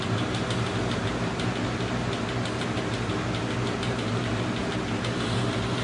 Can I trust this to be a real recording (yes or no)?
yes